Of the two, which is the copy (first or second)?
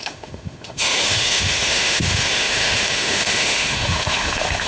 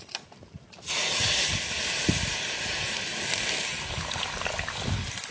first